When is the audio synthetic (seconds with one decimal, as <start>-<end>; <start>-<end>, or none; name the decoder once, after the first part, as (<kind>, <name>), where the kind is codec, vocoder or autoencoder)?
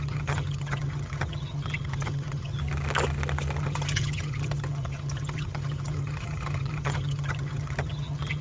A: 0.0-2.6 (vocoder, HiFi-GAN); 3.6-8.4